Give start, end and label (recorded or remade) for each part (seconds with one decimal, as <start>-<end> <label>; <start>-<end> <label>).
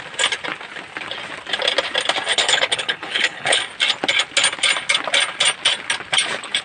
0.0-2.3 recorded; 2.3-3.6 remade; 3.6-6.6 recorded